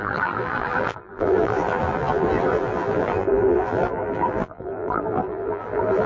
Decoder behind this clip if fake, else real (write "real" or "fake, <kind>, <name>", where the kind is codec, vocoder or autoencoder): fake, vocoder, BigVGAN v2